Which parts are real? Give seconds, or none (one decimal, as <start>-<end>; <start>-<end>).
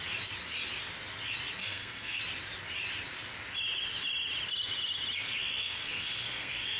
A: 0.0-1.6; 2.2-5.6